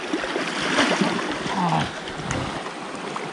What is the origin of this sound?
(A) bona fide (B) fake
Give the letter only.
A